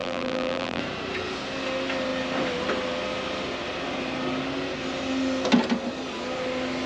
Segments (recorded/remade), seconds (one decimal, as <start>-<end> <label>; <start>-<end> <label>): 0.0-0.8 remade; 0.8-6.9 recorded